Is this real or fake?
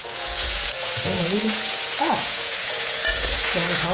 fake